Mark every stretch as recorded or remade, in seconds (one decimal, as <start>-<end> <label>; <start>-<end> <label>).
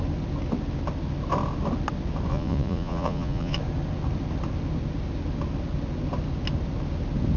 0.0-2.3 recorded; 2.3-3.6 remade; 3.6-7.4 recorded